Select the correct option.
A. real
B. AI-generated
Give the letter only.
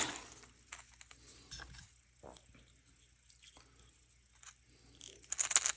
A